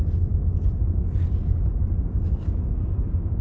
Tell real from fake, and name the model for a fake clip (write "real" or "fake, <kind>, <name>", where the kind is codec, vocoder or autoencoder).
real